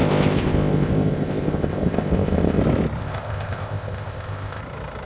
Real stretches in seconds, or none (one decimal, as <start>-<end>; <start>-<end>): 2.6-3.0; 4.6-5.1

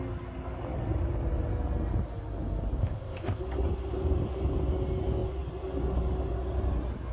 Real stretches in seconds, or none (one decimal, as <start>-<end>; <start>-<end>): 0.0-2.8; 3.4-7.1

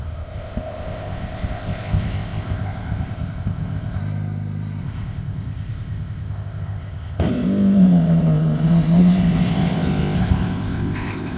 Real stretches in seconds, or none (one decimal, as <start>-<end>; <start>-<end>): 4.0-4.8

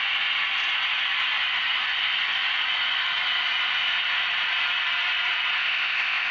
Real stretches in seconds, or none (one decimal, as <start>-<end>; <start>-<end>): 0.0-5.6

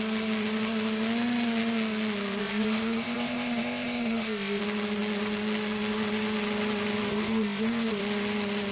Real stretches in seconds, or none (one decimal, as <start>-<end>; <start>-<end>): 0.0-2.4; 4.6-7.1; 8.0-8.7

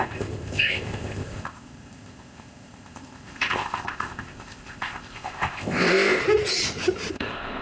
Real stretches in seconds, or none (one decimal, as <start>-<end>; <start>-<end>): 6.2-7.1